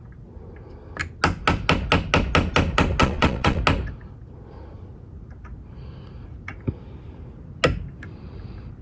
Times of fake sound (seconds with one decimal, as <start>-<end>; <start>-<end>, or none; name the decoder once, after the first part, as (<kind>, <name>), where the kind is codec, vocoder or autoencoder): 3.0-3.6 (vocoder, Vocos)